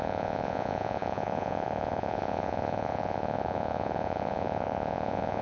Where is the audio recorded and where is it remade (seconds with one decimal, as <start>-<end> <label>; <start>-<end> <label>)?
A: 0.0-5.4 remade